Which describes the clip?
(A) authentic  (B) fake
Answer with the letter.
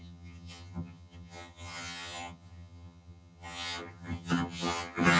B